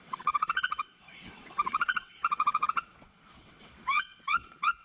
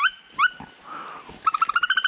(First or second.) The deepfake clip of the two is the first